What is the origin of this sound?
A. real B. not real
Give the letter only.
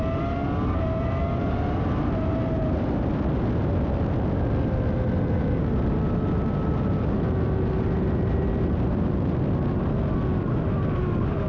A